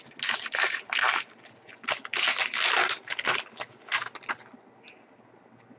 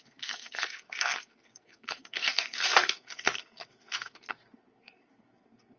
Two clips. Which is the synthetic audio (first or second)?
second